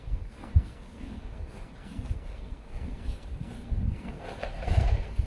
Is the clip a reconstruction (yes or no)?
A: yes